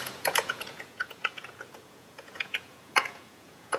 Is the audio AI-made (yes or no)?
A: yes